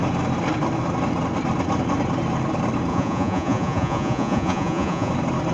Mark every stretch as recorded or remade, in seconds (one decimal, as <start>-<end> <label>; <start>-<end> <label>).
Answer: 0.0-2.9 recorded; 2.9-5.1 remade; 5.1-5.5 recorded